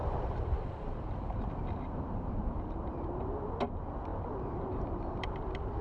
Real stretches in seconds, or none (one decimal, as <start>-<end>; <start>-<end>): 3.5-4.1